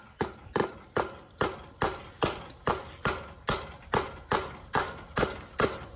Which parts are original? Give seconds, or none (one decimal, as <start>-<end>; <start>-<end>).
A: 0.0-6.0